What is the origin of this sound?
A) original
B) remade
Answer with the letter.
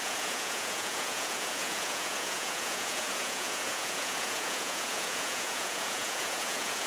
B